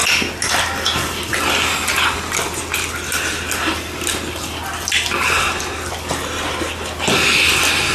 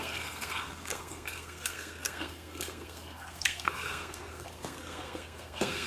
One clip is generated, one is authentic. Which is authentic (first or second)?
first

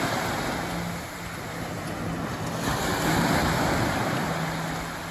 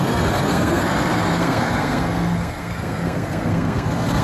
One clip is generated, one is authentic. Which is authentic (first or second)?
first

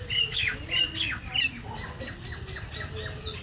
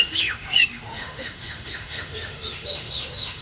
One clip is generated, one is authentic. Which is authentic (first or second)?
first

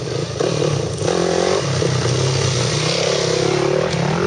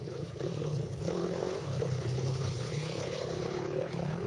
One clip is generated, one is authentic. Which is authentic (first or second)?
first